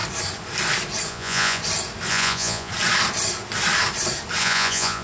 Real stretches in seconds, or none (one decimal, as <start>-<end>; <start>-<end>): 0.0-1.1; 1.6-2.1; 2.7-4.4